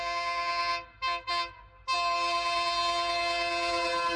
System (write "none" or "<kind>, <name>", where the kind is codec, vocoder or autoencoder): none